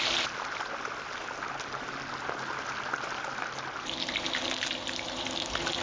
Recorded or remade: recorded